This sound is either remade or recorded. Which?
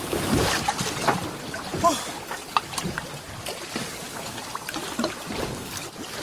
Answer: remade